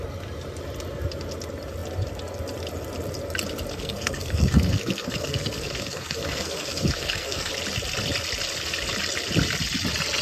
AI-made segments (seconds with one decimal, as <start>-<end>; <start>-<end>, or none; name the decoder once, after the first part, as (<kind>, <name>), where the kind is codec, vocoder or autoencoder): 3.7-7.5 (codec, SNAC)